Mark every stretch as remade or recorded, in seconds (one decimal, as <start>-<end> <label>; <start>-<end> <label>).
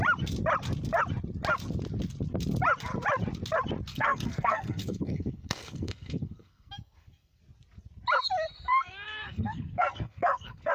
0.0-3.9 recorded; 3.9-7.4 remade; 7.4-8.5 recorded; 8.5-10.7 remade